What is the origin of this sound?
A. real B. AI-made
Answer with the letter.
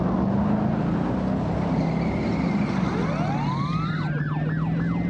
A